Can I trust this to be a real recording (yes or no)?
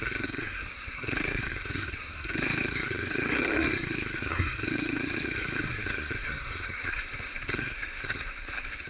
no